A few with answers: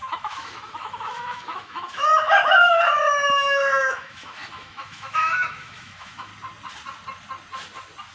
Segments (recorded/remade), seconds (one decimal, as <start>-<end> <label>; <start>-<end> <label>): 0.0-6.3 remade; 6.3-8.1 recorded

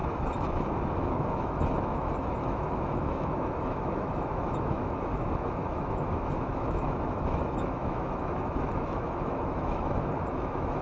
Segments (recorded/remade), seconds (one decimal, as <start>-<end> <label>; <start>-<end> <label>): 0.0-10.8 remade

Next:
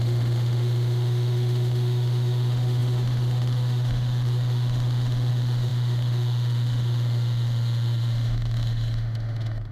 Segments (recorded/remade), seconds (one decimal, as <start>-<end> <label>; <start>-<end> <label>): 0.0-9.7 remade

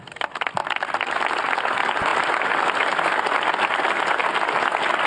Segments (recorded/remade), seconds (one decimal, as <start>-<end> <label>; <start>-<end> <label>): 0.0-5.1 recorded

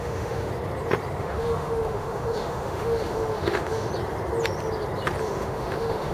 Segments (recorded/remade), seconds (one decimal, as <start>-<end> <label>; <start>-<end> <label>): 0.0-0.5 remade; 0.5-1.2 recorded; 1.2-3.9 remade; 3.9-5.2 recorded; 5.2-6.1 remade

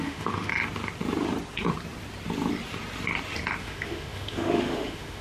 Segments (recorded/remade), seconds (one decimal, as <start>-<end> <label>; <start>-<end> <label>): 0.0-0.5 remade; 0.5-3.6 recorded; 3.6-5.2 remade